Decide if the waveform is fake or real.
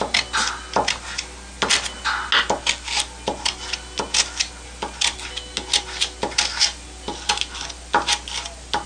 real